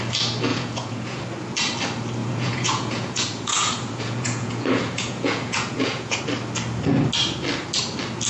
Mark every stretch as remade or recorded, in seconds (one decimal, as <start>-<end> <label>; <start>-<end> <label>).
0.0-0.5 recorded; 0.5-1.2 remade; 1.2-2.2 recorded; 2.2-6.2 remade; 6.2-8.3 recorded